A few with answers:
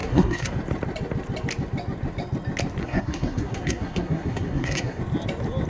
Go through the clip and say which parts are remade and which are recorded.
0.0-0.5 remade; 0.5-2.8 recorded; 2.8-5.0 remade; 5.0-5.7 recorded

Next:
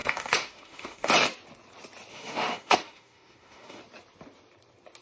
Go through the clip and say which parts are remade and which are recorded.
0.0-1.1 remade; 1.1-2.1 recorded; 2.1-3.8 remade; 3.8-5.0 recorded

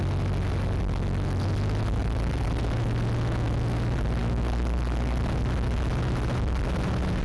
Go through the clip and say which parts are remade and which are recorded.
0.0-2.0 recorded; 2.0-2.6 remade; 2.6-7.2 recorded

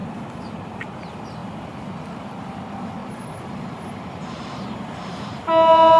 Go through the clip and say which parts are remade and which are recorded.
0.0-0.8 remade; 0.8-3.0 recorded; 3.0-4.2 remade; 4.2-6.0 recorded

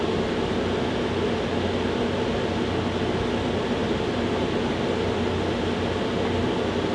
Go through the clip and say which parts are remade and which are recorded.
0.0-6.9 recorded

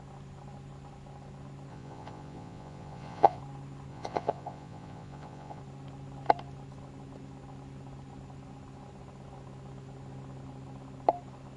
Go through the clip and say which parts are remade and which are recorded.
0.0-1.7 recorded; 1.7-3.4 remade; 3.4-3.9 recorded; 3.9-5.6 remade; 5.6-11.6 recorded

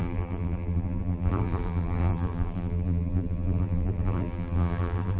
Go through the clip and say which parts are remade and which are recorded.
0.0-5.2 remade